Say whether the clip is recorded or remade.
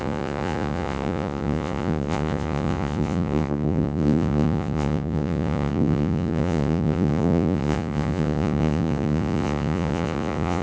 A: remade